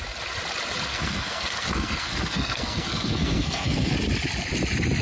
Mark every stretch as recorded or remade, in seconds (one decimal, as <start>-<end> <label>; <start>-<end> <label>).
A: 0.0-0.9 recorded; 0.9-3.9 remade; 3.9-5.0 recorded